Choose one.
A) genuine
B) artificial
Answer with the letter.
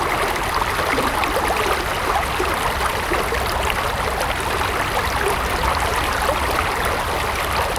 A